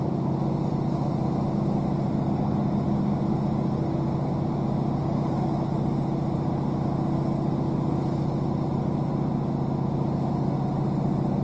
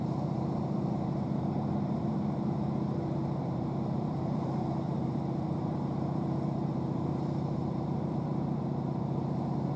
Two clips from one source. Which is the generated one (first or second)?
second